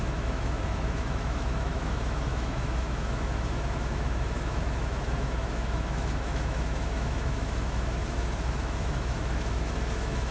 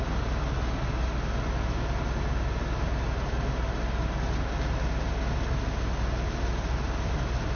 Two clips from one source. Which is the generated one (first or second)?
first